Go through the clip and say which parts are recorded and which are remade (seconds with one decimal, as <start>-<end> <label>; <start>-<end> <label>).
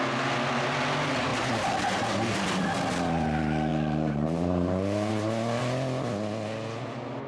0.0-3.7 recorded; 3.7-5.1 remade; 5.1-7.3 recorded